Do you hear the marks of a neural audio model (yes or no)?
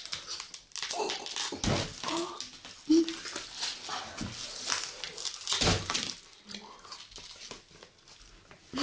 no